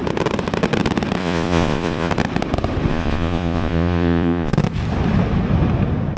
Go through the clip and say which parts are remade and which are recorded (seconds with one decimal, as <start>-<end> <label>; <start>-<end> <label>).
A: 0.0-1.2 recorded; 1.2-2.1 remade; 2.1-2.9 recorded; 2.9-4.5 remade; 4.5-6.2 recorded